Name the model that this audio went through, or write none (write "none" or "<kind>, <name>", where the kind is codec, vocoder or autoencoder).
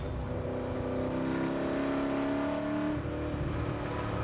none